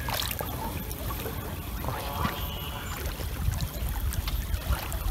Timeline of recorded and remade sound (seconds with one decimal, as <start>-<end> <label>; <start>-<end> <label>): 0.0-5.1 recorded